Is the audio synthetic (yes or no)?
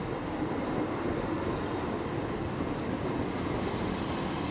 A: no